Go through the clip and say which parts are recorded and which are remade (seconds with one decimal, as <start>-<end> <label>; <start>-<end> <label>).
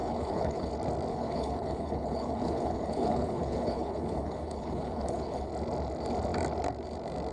0.0-0.7 remade; 0.7-1.1 recorded; 1.1-5.5 remade; 5.5-7.3 recorded